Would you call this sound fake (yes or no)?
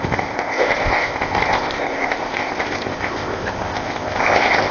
yes